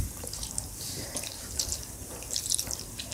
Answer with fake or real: fake